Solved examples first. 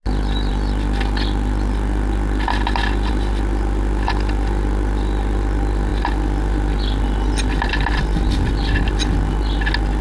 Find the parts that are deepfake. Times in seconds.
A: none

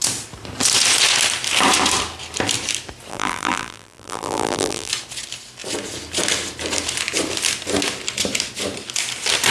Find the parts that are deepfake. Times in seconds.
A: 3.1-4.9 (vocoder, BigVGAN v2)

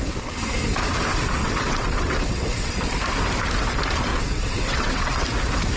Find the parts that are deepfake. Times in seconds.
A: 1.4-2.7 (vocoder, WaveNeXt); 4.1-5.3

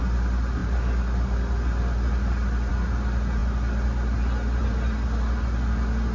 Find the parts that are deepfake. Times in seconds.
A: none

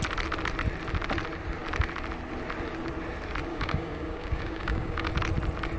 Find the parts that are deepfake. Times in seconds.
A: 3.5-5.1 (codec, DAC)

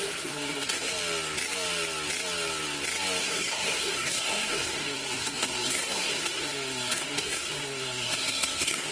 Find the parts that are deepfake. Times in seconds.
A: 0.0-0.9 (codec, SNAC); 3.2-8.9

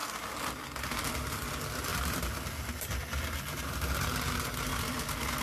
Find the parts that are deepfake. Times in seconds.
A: 1.9-3.1 (vocoder, BigVGAN v2); 4.7-5.4

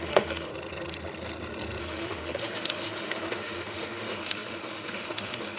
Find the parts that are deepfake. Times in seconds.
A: 0.0-0.5 (autoencoder, DAC-VAE); 1.8-5.6